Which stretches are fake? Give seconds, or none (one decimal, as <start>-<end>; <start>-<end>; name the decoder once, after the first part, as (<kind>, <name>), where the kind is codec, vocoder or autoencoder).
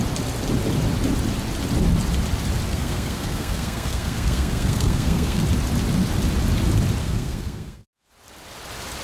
2.7-5.4 (codec, SNAC); 7.0-8.1